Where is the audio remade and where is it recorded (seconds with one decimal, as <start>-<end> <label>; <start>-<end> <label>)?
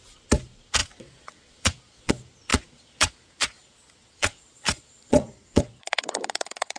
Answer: 0.0-0.8 recorded; 0.8-2.1 remade; 2.1-2.5 recorded; 2.5-6.8 remade